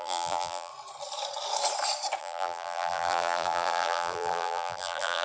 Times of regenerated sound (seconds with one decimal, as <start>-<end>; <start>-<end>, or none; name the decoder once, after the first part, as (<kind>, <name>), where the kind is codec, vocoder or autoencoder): 0.0-0.7 (vocoder, BigVGAN v2); 2.2-5.2